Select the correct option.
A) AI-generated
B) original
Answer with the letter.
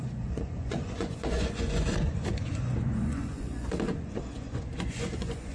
A